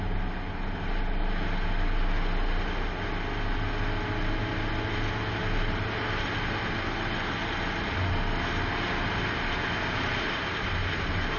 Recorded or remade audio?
recorded